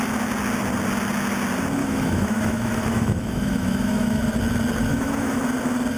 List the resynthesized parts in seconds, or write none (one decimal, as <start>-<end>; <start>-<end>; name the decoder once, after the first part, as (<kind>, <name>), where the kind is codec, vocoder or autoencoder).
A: 1.8-4.2 (autoencoder, DAC-VAE); 4.9-5.4